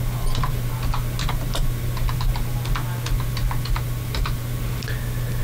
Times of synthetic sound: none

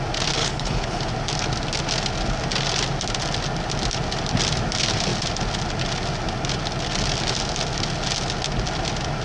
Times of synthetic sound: 0.4-1.0 (codec, HILCodec)

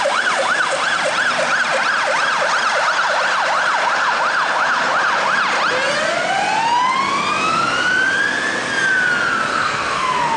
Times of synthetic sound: 9.5-10.4 (codec, SNAC)